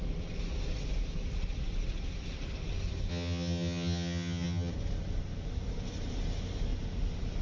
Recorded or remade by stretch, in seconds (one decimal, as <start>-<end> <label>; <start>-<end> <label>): 0.0-3.1 recorded; 3.1-4.7 remade; 4.7-7.4 recorded